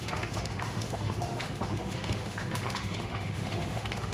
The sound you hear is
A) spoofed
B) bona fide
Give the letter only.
A